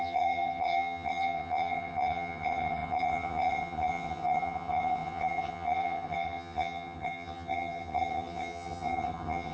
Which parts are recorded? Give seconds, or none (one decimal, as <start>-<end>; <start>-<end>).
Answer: none